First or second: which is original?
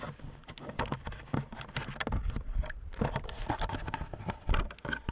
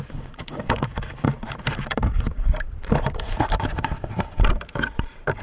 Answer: first